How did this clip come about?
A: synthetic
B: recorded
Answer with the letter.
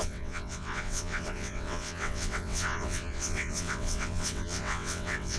A